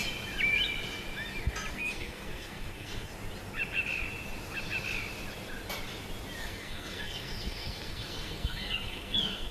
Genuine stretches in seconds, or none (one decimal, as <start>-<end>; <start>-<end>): 0.0-1.7; 3.1-6.4